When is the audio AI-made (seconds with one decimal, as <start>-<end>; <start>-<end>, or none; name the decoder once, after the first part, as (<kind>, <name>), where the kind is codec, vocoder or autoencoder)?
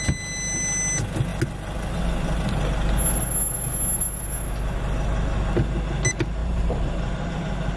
6.4-7.3 (vocoder, BigVGAN v2)